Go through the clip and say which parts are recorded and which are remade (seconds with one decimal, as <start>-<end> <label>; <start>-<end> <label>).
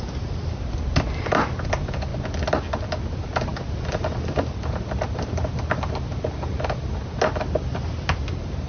0.0-8.7 recorded